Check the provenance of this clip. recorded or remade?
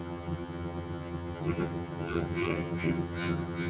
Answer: remade